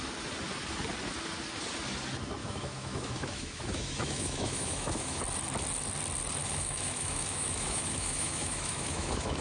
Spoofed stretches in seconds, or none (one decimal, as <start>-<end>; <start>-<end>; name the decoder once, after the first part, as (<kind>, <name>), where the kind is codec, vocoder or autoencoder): 2.4-5.2 (autoencoder, DAC-VAE); 6.4-9.4